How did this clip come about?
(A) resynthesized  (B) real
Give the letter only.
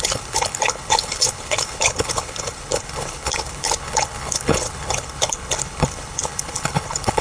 A